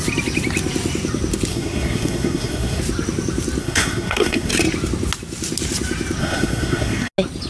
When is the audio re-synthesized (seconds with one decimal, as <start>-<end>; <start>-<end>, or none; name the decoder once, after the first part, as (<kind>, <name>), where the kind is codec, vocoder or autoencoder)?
1.5-2.8 (codec, SNAC); 3.6-4.5; 6.2-7.1